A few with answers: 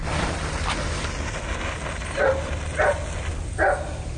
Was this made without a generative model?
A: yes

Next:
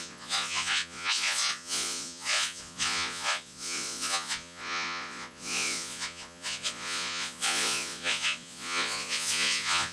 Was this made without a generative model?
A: no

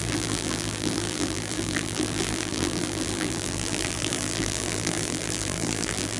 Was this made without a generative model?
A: no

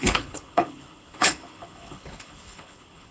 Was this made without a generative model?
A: no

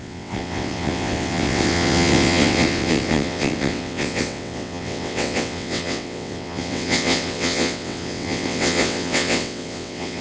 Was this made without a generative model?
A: no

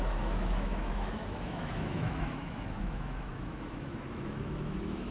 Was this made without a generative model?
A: no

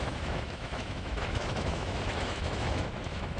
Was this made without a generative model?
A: no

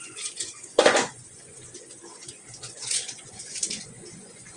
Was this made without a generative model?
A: no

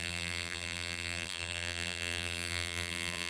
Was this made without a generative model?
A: no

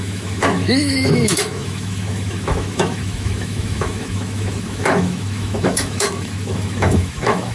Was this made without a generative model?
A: no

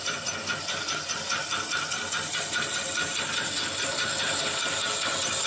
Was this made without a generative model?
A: yes